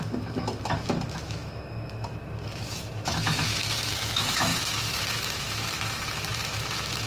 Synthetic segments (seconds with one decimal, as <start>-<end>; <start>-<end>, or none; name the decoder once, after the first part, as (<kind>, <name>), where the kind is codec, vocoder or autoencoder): 0.0-7.1 (autoencoder, DAC-VAE)